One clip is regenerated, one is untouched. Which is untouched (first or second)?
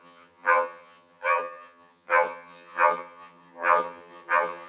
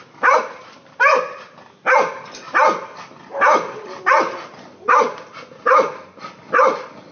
second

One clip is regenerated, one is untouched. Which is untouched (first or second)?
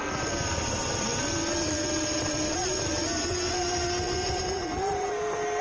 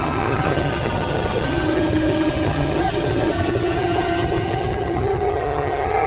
first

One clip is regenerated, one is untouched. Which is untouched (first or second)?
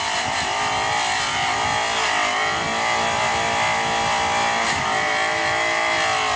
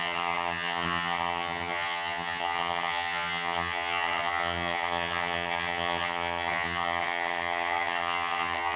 first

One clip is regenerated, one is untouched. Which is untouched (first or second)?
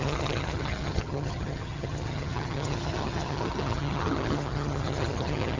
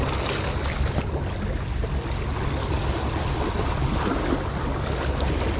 second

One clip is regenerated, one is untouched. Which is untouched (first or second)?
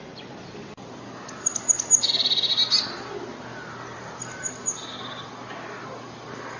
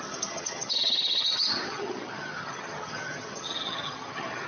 first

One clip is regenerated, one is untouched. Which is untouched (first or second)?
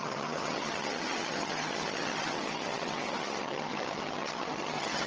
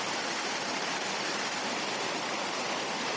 second